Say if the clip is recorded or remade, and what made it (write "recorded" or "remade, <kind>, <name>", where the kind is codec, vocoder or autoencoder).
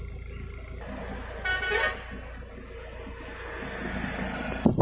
recorded